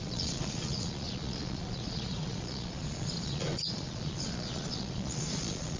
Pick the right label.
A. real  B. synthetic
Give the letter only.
B